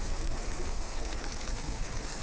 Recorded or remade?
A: remade